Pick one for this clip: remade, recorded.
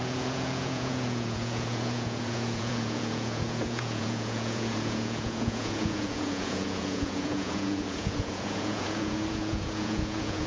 remade